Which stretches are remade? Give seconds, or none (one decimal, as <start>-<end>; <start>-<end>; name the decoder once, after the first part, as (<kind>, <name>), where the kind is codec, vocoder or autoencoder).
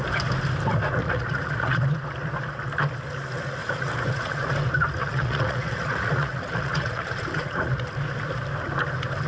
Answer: 1.0-1.8 (vocoder, Vocos); 3.6-4.5; 5.0-7.7